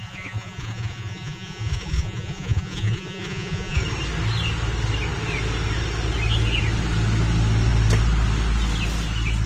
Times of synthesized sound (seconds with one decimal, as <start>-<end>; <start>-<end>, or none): 0.0-3.8

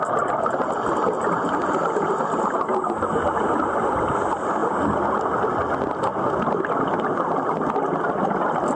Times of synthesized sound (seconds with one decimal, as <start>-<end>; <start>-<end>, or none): none

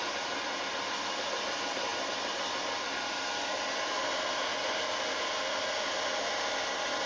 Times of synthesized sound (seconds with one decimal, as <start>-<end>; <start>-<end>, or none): none

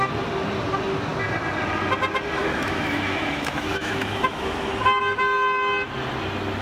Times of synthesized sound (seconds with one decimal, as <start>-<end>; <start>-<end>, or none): 2.4-4.7

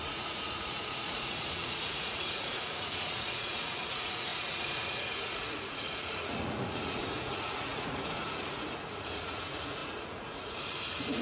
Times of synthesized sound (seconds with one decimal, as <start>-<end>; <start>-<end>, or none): 0.0-11.2